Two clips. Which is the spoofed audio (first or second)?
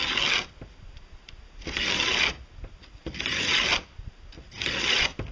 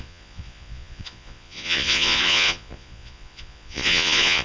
second